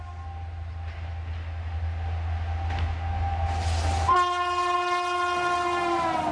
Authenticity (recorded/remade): recorded